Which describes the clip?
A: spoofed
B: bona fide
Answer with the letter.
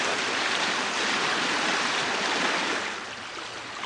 B